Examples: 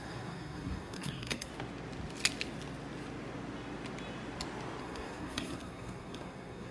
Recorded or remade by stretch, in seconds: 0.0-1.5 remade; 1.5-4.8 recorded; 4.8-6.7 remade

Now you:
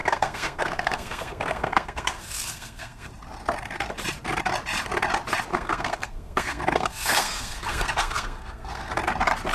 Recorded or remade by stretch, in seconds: 0.0-3.1 remade; 3.1-5.5 recorded; 5.5-8.9 remade; 8.9-9.5 recorded

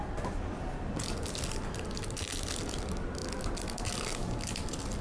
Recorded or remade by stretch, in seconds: 0.0-5.0 recorded

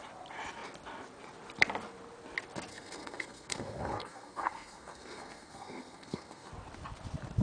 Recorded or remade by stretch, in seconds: 0.0-2.7 recorded; 2.7-6.5 remade; 6.5-7.4 recorded

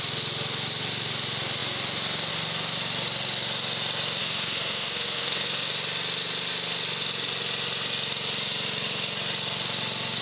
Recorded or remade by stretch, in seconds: 0.0-4.2 recorded; 4.2-5.7 remade; 5.7-10.2 recorded

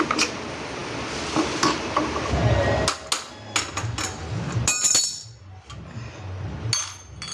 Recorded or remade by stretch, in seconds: 0.0-7.3 recorded

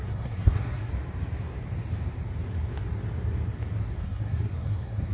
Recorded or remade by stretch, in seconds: 0.0-0.9 remade; 0.9-4.0 recorded; 4.0-5.1 remade